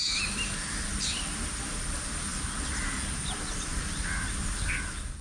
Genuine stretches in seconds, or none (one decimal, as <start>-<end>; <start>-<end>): 0.0-5.2